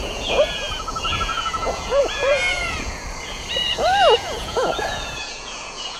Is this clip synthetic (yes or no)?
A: yes